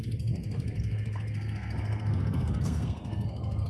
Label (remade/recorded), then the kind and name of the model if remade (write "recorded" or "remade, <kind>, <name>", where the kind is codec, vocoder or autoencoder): remade, codec, SNAC